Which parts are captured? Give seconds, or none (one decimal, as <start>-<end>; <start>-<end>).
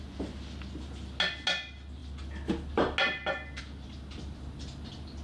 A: 0.0-5.2